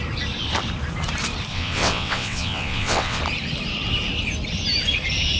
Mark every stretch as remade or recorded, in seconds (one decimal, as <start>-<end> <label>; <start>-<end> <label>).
0.0-1.5 recorded; 1.5-3.2 remade; 3.2-5.4 recorded